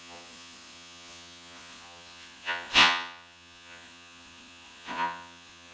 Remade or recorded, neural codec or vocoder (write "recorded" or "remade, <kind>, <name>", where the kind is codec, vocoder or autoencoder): remade, vocoder, Vocos